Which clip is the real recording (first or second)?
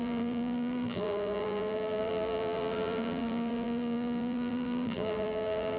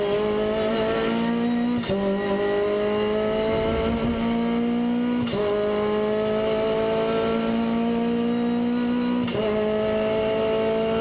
second